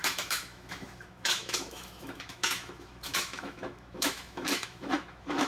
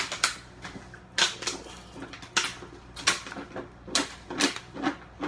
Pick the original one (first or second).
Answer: second